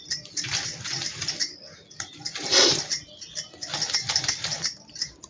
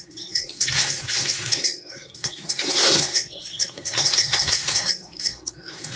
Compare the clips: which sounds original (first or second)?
first